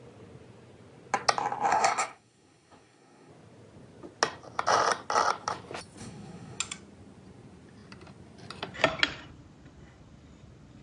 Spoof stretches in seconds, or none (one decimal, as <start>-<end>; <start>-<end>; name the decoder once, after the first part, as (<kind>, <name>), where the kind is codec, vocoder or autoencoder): 1.7-3.3 (codec, SNAC); 6.0-6.6